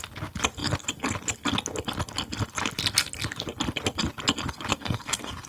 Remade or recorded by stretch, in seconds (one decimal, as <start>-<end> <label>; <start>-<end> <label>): 0.0-4.7 recorded; 4.7-5.5 remade